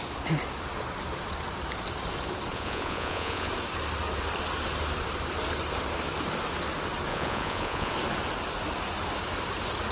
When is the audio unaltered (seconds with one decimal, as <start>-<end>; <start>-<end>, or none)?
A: 0.0-2.5; 3.5-7.1; 7.9-9.9